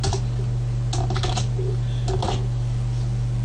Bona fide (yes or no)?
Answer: yes